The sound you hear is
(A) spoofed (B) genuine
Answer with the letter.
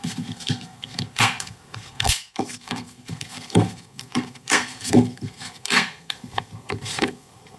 A